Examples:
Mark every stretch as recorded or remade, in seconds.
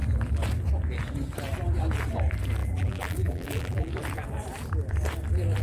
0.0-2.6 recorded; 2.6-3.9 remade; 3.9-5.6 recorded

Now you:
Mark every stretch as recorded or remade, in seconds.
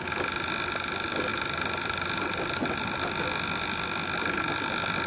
0.0-1.3 recorded; 1.3-4.4 remade; 4.4-5.1 recorded